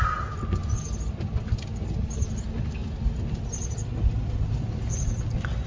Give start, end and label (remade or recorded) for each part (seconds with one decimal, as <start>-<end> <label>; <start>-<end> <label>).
0.0-5.7 recorded